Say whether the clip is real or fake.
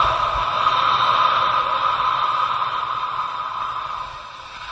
real